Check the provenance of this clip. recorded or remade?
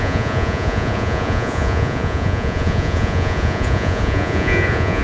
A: remade